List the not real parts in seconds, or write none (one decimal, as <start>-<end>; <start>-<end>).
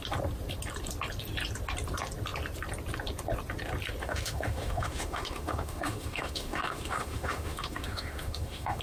4.0-8.8